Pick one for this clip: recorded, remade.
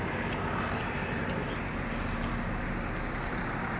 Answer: recorded